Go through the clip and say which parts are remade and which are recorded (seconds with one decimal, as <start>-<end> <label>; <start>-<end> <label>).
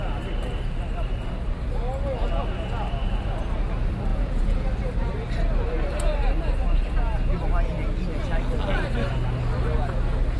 0.0-4.1 recorded; 4.1-4.7 remade; 4.7-10.4 recorded